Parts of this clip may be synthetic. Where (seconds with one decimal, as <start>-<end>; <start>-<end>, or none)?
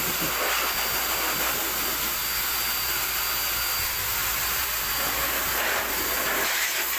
4.2-4.8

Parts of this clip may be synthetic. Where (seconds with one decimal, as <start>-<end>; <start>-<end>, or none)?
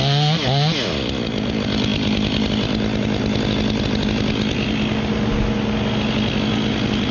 none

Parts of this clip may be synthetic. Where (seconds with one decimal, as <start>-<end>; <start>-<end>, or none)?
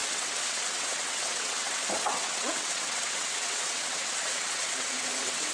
0.0-5.5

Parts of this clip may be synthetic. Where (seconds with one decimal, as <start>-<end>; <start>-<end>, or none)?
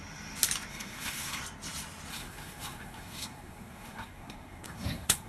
0.7-1.4; 2.1-5.3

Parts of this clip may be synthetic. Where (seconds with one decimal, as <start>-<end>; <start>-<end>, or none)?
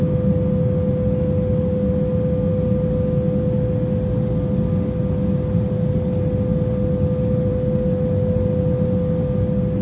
none